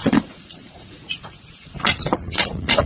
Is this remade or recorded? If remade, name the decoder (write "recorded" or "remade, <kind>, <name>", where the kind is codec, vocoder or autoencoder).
remade, vocoder, Vocos